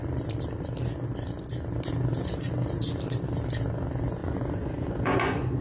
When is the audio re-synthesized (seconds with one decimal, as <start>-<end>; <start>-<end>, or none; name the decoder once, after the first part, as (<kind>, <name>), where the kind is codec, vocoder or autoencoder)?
4.2-5.6 (vocoder, Vocos)